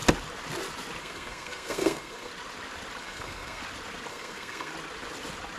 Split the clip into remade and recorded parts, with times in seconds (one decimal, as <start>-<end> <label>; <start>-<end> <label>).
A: 0.0-1.0 recorded; 1.0-2.3 remade; 2.3-3.0 recorded; 3.0-3.6 remade; 3.6-4.1 recorded; 4.1-4.7 remade; 4.7-5.6 recorded